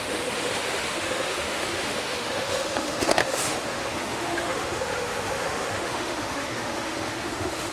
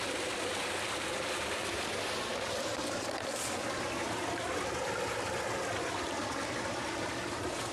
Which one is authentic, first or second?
second